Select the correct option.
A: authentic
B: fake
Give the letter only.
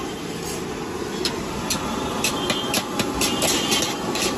A